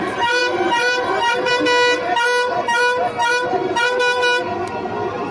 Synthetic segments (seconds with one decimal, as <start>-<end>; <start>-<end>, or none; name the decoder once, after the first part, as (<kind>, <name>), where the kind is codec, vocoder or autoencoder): 0.4-1.5 (vocoder, BigVGAN v2)